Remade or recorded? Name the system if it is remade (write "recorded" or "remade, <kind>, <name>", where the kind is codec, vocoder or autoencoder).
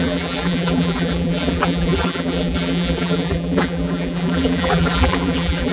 remade, vocoder, BigVGAN v2